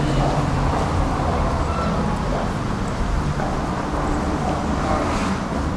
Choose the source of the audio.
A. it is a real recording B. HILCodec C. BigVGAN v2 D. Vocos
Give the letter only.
A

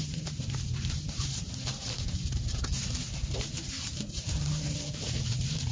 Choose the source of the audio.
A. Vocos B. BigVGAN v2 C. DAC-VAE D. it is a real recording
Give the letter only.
B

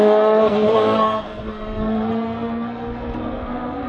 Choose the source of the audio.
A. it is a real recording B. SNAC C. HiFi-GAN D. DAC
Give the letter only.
B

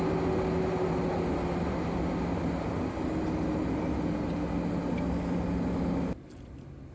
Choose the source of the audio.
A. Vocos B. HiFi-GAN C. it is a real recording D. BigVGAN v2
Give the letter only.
C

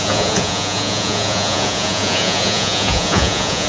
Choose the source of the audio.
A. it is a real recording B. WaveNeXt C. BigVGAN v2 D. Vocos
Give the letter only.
D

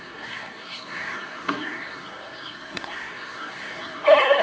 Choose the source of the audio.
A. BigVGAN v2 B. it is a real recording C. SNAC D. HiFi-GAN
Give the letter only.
C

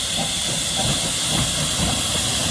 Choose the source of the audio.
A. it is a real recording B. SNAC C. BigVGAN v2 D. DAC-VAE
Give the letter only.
A